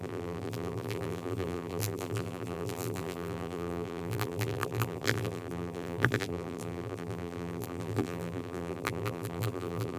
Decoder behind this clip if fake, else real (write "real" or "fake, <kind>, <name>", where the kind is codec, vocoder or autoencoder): fake, vocoder, BigVGAN v2